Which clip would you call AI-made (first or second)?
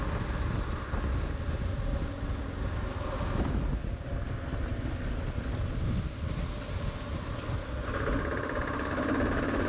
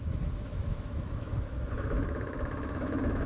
second